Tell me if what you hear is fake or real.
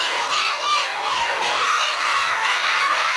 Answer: fake